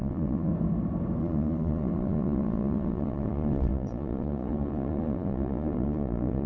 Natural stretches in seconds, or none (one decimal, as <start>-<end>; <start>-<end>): 0.5-1.2